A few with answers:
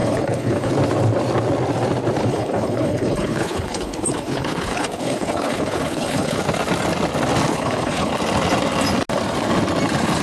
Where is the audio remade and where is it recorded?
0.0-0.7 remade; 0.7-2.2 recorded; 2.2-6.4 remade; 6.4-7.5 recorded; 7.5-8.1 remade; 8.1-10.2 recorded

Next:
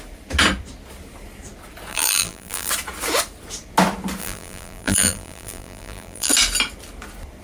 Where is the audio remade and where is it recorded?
0.0-1.9 recorded; 1.9-2.7 remade; 2.7-4.2 recorded; 4.2-6.3 remade; 6.3-7.4 recorded

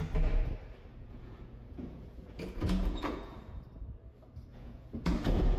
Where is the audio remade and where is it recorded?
0.0-0.9 recorded; 0.9-3.6 remade; 3.6-4.5 recorded; 4.5-5.6 remade

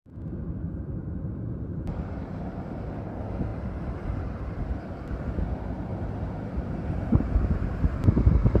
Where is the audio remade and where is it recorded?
0.0-1.7 recorded; 1.7-2.9 remade; 2.9-3.5 recorded; 3.5-5.1 remade; 5.1-5.9 recorded; 5.9-7.2 remade; 7.2-8.6 recorded

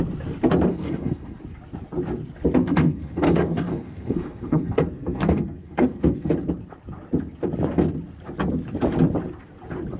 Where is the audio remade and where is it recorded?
0.0-0.7 recorded; 0.7-1.4 remade; 1.4-2.6 recorded; 2.6-6.3 remade; 6.3-10.0 recorded